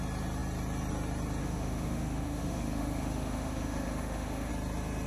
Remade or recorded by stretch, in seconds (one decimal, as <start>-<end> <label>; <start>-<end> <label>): 0.0-1.4 recorded; 1.4-4.5 remade; 4.5-5.1 recorded